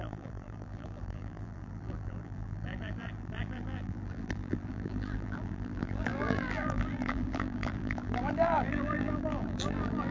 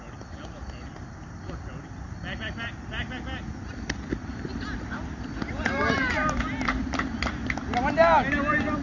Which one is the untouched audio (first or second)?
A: second